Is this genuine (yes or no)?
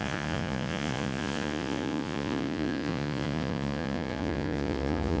no